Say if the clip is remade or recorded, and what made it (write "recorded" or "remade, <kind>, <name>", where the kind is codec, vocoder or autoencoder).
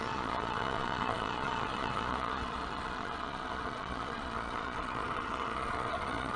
remade, vocoder, Vocos